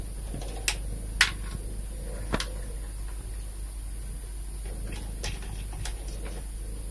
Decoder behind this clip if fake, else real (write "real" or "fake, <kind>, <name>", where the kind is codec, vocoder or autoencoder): real